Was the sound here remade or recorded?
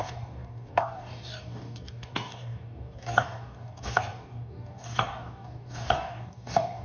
remade